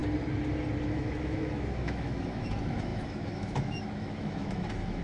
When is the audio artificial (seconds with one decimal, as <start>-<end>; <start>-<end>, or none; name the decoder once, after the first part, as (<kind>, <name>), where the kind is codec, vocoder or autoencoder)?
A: 0.9-5.0 (autoencoder, DAC-VAE)